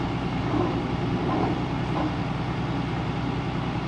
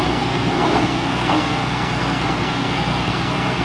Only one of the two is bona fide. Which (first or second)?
first